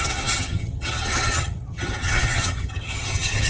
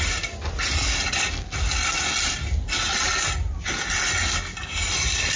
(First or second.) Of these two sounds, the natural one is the second